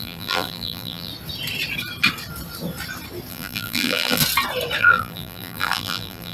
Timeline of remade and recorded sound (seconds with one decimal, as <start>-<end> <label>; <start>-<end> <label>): 0.0-1.1 remade; 1.1-3.3 recorded; 3.3-4.2 remade; 4.2-4.8 recorded; 4.8-6.3 remade